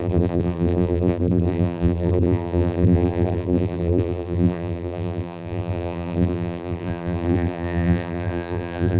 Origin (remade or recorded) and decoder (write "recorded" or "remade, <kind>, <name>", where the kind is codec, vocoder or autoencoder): remade, vocoder, BigVGAN v2